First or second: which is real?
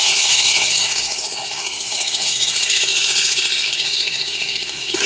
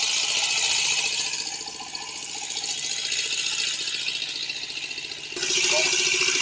second